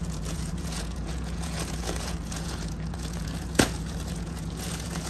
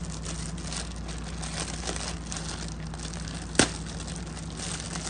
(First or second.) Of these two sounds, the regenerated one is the first